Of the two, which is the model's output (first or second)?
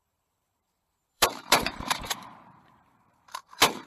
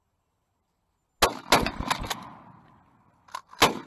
first